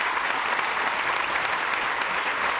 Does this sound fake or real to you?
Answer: real